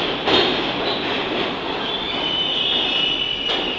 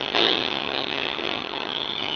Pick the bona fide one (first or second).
first